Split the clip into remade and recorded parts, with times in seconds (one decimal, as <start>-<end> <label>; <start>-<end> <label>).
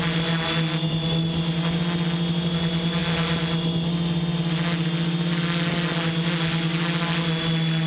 0.0-7.9 recorded